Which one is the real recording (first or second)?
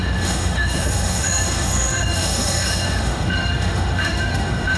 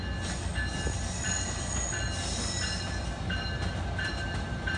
second